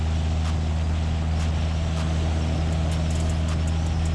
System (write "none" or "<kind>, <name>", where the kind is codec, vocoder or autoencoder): none